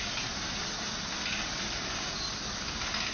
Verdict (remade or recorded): recorded